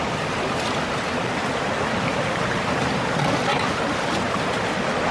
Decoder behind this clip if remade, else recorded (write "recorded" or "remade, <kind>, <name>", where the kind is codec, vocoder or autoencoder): recorded